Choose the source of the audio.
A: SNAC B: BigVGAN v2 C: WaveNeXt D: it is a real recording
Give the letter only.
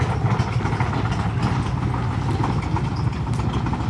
D